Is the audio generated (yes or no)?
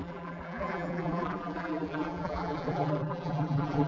yes